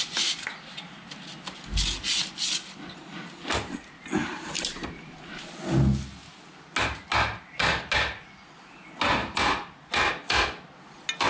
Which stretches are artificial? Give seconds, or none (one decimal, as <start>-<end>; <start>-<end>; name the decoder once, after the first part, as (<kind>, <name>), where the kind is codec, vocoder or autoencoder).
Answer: 4.2-4.9 (vocoder, BigVGAN v2); 9.2-10.1